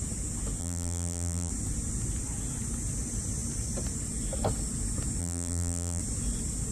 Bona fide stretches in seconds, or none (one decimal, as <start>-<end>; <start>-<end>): 0.0-0.6; 1.5-5.2; 6.0-6.7